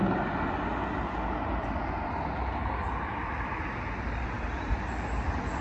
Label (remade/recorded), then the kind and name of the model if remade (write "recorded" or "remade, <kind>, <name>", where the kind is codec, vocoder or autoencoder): recorded